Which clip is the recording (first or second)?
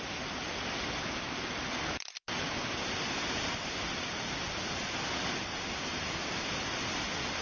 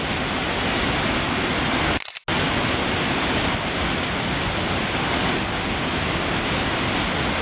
second